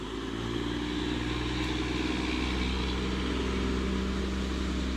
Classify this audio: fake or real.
real